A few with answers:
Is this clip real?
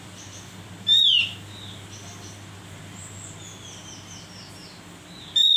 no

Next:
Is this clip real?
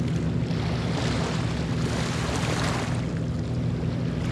yes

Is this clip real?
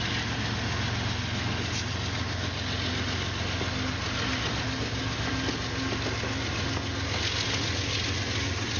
yes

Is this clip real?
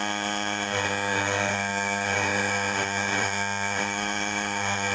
no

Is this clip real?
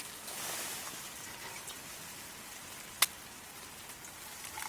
yes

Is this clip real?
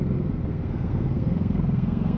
no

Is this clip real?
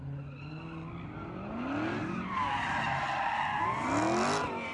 yes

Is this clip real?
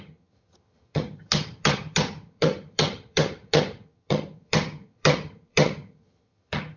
no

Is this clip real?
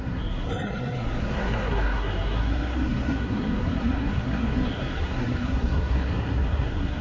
no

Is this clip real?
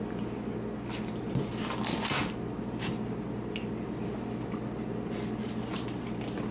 yes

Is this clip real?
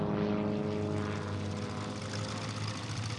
yes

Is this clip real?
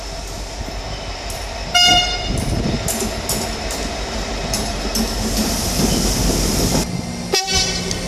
yes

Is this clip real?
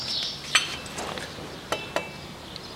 yes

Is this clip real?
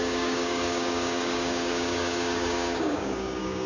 no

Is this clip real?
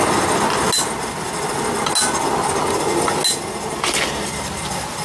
yes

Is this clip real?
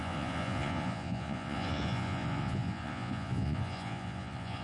no